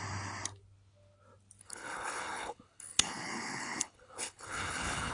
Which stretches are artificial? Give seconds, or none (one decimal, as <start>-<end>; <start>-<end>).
1.6-5.1